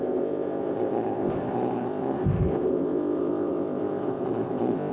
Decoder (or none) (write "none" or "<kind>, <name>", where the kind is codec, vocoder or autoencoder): codec, ZipCodec